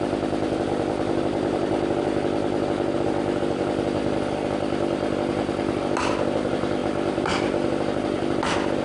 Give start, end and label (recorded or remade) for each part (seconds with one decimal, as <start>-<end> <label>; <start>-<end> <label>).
0.0-8.8 recorded